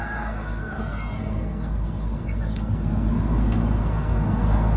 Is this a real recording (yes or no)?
no